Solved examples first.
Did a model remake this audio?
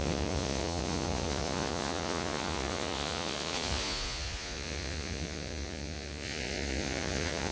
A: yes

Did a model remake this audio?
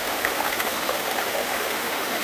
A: yes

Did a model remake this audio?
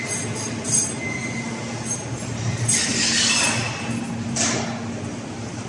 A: no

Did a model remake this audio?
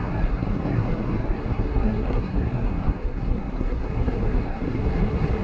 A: yes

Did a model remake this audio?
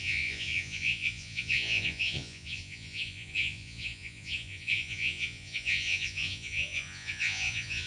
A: yes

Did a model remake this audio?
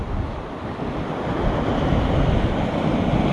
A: no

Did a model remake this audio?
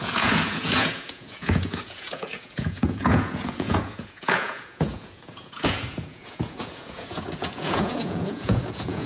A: yes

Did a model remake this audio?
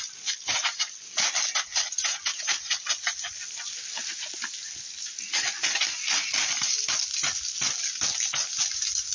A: no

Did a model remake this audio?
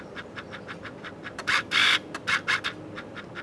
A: no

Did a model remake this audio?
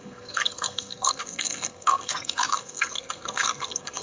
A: yes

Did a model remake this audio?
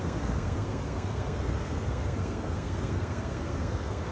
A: yes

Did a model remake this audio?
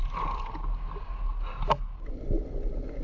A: no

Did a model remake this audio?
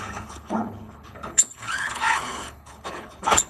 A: yes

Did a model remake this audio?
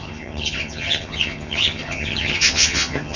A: yes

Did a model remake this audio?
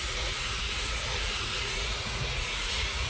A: yes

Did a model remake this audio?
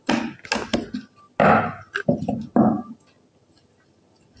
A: no